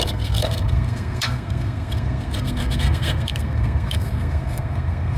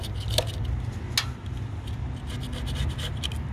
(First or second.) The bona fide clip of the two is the second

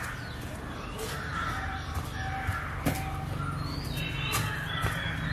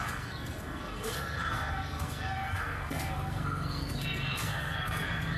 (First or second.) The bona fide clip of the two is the first